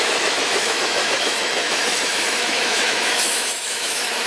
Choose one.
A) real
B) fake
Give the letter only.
B